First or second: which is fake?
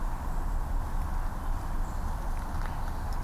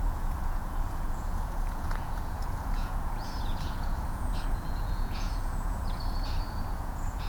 second